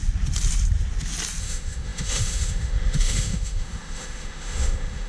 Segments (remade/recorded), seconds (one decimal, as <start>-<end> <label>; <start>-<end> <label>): 0.0-1.4 recorded; 1.4-5.1 remade